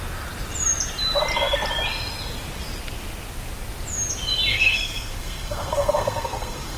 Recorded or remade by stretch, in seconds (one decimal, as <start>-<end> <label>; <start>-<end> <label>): 0.0-4.5 recorded; 4.5-6.8 remade